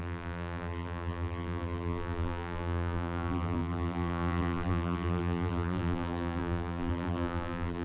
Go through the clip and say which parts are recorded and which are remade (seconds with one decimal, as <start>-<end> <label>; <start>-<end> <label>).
0.0-7.8 remade